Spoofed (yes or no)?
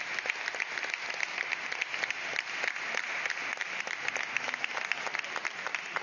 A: no